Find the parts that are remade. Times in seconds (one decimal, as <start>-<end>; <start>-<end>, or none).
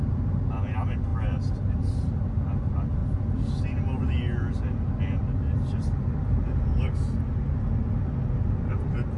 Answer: none